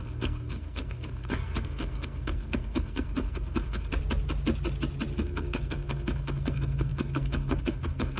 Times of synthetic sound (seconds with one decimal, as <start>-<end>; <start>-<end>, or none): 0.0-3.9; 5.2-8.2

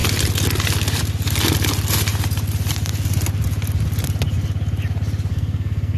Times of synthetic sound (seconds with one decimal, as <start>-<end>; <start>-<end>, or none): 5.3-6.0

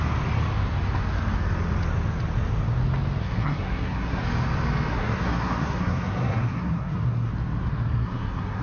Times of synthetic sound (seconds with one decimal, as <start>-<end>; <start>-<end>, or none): 3.2-4.2; 4.9-7.3; 7.7-8.6

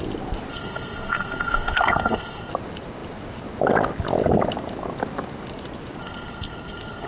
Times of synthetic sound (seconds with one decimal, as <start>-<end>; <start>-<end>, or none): 0.5-2.5; 6.0-7.1

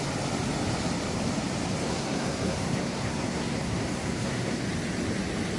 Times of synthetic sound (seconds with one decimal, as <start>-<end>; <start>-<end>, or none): 1.8-4.6

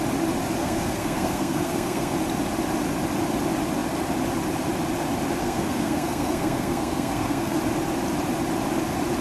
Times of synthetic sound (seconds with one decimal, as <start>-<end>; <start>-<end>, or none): 0.6-2.1; 5.4-7.6

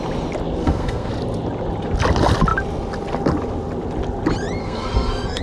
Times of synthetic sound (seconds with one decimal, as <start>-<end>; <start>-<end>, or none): 0.6-1.1; 4.6-5.4